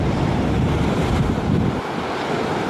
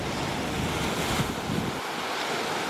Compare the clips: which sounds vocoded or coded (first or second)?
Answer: first